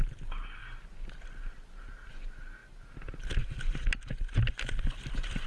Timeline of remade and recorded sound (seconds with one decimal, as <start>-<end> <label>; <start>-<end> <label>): 0.0-5.5 recorded